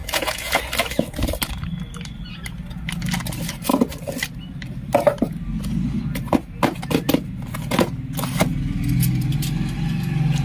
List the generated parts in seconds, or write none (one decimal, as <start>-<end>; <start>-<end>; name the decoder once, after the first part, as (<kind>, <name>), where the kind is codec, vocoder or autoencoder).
0.0-0.6 (vocoder, Vocos)